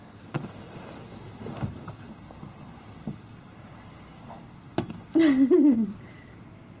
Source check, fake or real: real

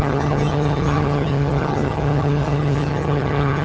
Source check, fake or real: fake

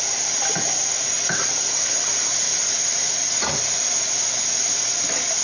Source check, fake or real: real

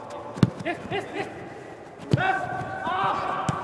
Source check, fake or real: real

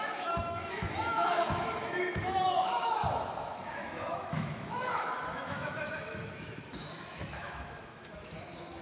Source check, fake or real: fake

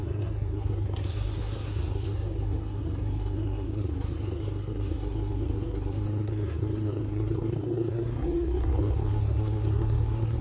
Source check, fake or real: fake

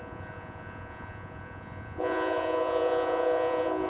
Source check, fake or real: fake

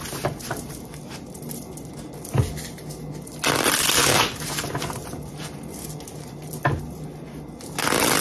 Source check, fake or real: real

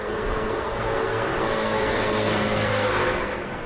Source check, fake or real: fake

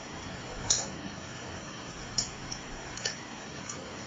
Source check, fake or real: fake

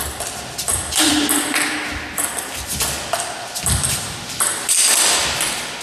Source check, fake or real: real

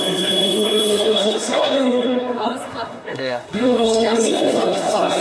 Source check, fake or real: fake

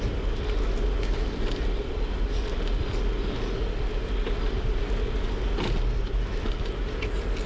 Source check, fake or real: real